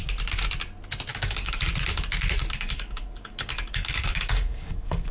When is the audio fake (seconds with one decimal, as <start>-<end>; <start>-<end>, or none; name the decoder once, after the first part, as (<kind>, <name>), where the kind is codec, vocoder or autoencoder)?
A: 1.1-1.7 (codec, DAC); 2.4-5.1